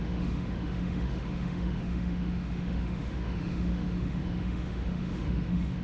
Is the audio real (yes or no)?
no